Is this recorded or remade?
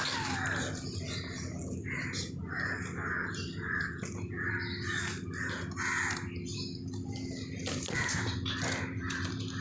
recorded